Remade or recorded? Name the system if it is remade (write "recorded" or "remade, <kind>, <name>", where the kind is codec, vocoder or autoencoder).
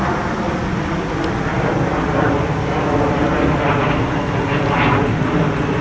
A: recorded